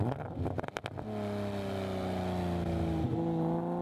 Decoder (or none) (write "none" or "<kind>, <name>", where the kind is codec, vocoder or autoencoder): none